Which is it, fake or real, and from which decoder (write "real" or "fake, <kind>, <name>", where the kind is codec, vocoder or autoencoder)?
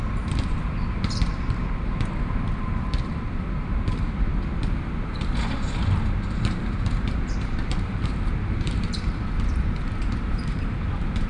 fake, vocoder, BigVGAN v2